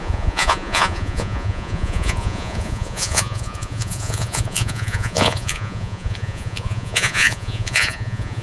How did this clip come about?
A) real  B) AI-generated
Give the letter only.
B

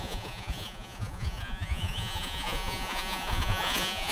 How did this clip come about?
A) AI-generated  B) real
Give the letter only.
A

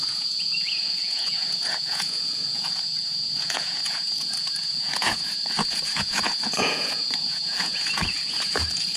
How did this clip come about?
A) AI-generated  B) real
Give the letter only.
A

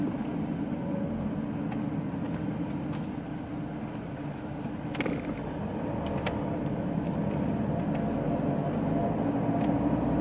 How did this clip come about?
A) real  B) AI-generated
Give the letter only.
A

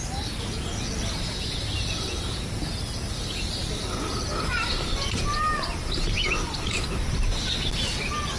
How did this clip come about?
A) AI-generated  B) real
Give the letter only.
B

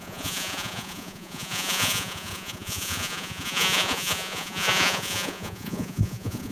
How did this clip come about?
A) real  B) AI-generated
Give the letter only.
B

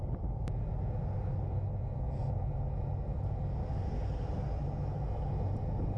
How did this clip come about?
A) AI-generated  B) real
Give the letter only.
B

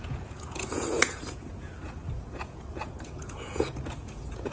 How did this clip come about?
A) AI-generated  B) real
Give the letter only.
A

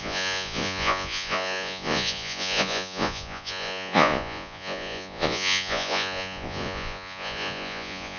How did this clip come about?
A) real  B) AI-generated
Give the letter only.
B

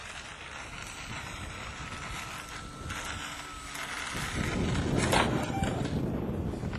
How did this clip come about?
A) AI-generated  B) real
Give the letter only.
B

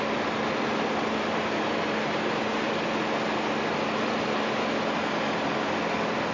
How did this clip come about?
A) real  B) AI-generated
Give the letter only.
A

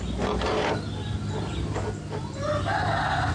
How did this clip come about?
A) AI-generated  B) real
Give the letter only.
B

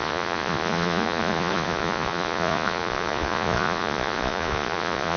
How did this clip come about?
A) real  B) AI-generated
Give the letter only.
B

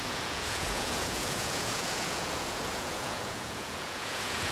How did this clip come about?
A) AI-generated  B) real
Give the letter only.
A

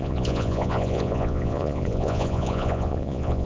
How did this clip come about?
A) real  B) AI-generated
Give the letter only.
B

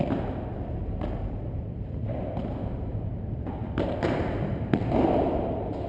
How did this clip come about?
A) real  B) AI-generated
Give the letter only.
A